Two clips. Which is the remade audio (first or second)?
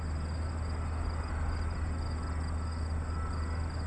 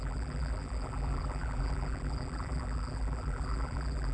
second